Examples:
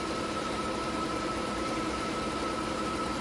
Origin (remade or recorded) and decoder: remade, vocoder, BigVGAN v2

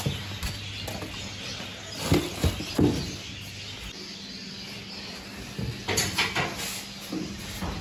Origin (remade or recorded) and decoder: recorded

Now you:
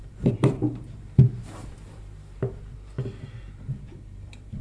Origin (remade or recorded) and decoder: remade, vocoder, BigVGAN v2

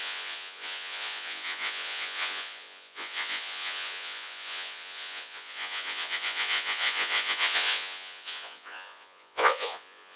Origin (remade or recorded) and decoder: remade, vocoder, Vocos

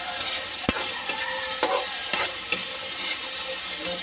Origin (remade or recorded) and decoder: recorded